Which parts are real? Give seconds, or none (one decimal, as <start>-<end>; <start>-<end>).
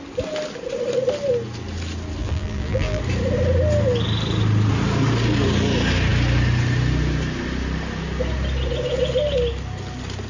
0.0-2.2; 3.0-10.3